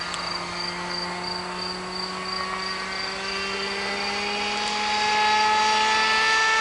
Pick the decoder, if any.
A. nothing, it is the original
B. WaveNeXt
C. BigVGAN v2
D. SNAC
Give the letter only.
A